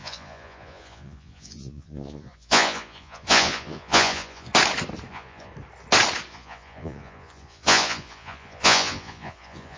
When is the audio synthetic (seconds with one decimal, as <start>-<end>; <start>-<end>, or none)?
0.0-4.5; 5.1-5.5; 6.3-9.8

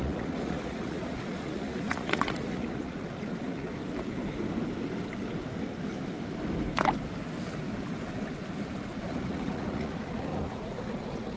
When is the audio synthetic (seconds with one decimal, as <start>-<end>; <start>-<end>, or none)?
0.0-3.8; 9.0-11.4

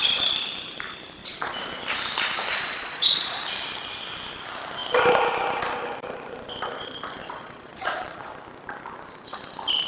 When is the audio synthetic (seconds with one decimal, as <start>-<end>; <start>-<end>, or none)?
1.2-1.8; 2.5-3.4; 7.2-8.3

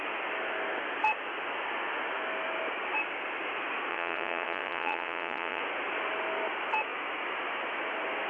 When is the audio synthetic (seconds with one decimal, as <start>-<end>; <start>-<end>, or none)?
3.9-5.6